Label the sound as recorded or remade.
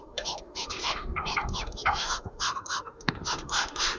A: remade